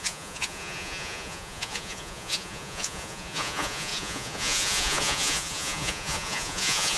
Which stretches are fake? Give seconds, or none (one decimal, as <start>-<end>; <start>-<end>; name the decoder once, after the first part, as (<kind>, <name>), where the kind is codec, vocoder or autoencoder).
0.0-7.0 (vocoder, Vocos)